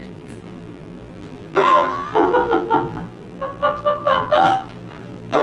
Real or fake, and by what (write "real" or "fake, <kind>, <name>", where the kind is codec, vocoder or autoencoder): fake, vocoder, BigVGAN v2